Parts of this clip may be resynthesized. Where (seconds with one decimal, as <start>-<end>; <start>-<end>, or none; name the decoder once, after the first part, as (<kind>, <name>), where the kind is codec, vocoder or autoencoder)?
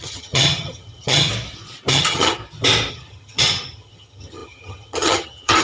0.0-1.3 (vocoder, HiFi-GAN); 1.9-2.4; 2.9-5.6